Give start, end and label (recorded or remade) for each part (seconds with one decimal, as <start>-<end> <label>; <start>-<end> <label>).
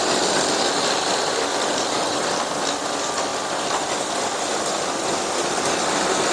0.0-6.3 recorded